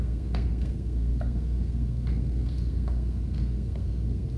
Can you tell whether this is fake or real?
fake